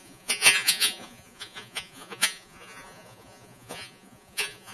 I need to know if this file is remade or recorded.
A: remade